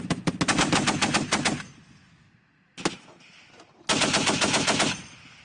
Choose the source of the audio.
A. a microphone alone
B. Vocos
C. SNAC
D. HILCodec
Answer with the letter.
A